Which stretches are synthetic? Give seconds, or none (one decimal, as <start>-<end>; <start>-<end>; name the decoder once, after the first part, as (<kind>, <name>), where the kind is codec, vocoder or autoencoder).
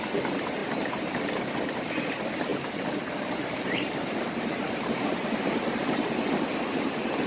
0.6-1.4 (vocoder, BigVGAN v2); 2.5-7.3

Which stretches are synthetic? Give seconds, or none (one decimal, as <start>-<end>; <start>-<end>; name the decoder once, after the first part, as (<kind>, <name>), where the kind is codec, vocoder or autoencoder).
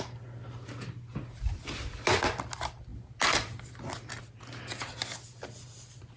none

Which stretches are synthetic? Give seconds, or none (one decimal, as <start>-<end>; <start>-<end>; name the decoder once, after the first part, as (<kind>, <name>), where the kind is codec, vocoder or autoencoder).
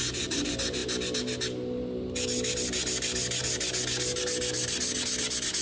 none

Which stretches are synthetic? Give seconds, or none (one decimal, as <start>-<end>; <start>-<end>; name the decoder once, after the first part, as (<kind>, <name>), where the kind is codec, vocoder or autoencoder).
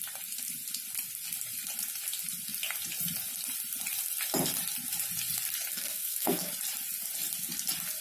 5.7-6.5 (codec, SNAC)